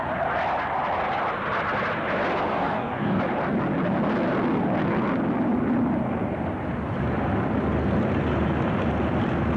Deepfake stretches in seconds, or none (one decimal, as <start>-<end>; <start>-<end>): 2.5-3.2